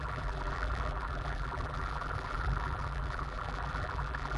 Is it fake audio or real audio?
fake